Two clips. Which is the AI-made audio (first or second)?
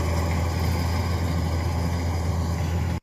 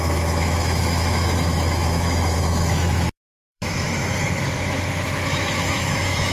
second